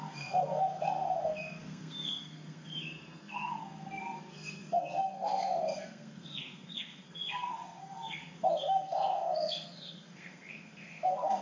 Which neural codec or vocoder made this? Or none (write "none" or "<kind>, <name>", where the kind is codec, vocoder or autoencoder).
codec, SNAC